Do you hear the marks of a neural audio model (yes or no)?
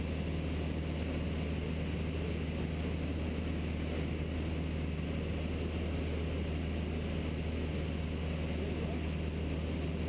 no